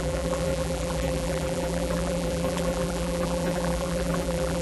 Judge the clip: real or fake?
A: fake